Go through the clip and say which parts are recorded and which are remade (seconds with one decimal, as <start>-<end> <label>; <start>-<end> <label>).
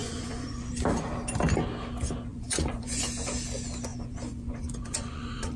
0.0-0.7 remade; 0.7-2.3 recorded; 2.3-3.0 remade; 3.0-3.9 recorded; 3.9-5.6 remade